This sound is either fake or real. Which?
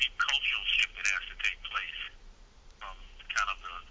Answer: real